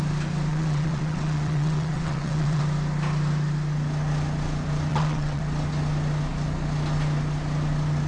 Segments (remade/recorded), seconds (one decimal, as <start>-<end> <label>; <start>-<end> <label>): 0.0-0.5 recorded; 0.5-2.6 remade; 2.6-4.9 recorded; 4.9-5.4 remade; 5.4-8.1 recorded

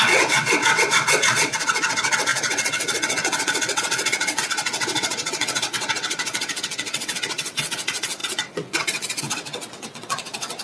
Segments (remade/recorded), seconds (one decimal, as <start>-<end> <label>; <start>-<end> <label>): 0.0-10.6 remade